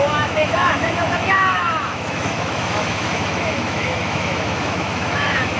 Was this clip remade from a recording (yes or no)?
yes